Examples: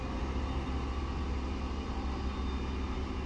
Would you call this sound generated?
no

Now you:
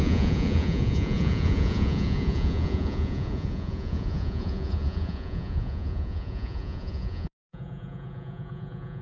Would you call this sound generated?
yes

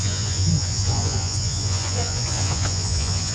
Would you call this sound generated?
yes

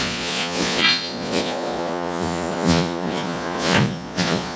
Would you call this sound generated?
yes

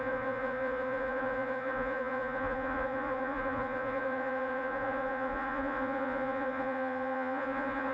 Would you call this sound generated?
yes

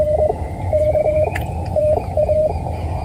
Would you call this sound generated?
yes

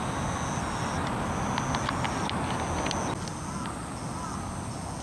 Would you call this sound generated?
no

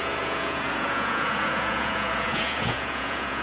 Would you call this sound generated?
yes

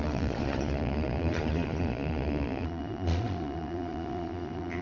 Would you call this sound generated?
yes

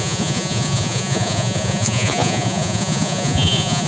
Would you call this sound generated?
yes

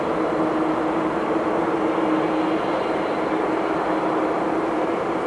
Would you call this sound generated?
no